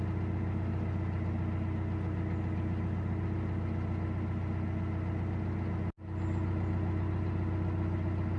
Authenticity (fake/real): real